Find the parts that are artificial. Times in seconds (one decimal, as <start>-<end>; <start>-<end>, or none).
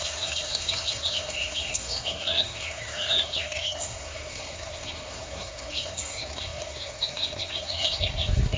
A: 0.0-8.6